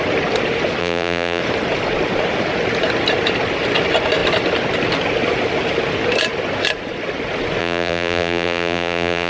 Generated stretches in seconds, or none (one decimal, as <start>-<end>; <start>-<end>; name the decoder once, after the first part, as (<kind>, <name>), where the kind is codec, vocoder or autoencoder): 0.8-1.4 (vocoder, BigVGAN v2); 7.6-9.3